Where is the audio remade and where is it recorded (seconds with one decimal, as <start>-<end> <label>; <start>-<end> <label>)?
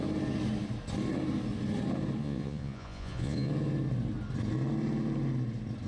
0.0-2.2 recorded; 2.2-3.5 remade; 3.5-5.9 recorded